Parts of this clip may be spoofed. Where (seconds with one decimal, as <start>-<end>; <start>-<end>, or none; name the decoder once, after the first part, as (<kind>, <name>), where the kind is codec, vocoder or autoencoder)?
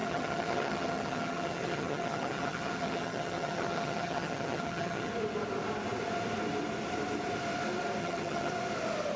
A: 0.0-5.1 (vocoder, HiFi-GAN); 8.0-8.5